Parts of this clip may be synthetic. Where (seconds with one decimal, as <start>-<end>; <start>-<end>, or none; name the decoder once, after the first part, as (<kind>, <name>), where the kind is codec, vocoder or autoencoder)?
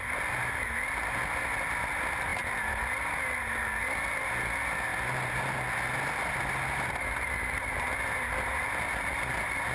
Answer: none